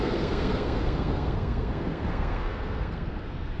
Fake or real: fake